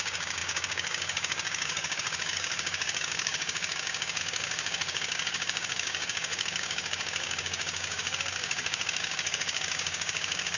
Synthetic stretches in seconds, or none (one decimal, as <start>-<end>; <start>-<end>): 0.0-10.6